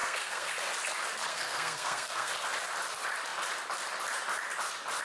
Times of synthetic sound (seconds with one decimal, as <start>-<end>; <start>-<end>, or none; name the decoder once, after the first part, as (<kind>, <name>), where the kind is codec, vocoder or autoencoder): 0.0-0.5 (codec, SNAC); 1.3-2.3